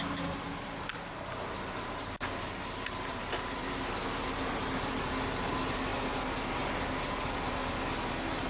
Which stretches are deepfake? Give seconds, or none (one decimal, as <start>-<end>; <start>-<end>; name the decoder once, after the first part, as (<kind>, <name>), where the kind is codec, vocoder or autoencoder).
none